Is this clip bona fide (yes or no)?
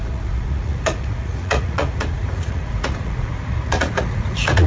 no